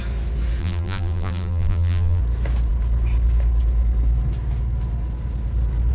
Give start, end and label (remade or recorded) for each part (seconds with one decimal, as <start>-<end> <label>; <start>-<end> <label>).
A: 0.0-0.6 recorded; 0.6-2.2 remade; 2.2-5.9 recorded